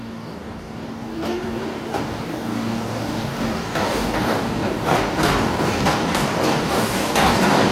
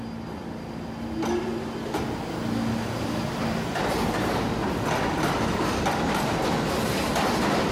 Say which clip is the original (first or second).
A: second